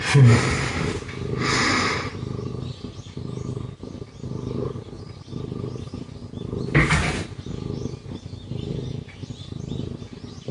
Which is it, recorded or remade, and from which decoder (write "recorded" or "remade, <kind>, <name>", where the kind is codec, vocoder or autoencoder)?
recorded